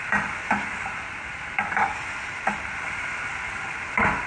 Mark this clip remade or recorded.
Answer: recorded